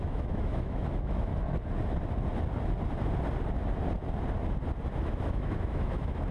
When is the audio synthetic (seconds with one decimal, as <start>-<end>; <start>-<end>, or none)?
0.0-1.3; 5.1-6.3

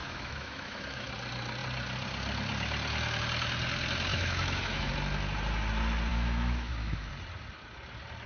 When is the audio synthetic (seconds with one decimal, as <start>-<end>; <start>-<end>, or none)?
0.0-1.1; 4.1-4.9; 6.1-7.1